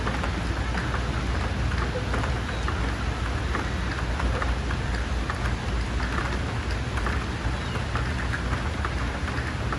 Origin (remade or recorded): recorded